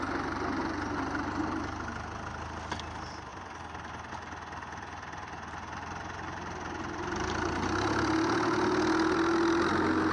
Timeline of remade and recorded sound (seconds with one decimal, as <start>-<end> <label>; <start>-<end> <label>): 0.0-10.1 recorded